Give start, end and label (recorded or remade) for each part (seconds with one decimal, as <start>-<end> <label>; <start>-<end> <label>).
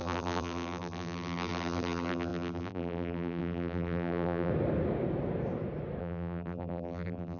0.0-4.5 remade; 4.5-6.0 recorded; 6.0-7.4 remade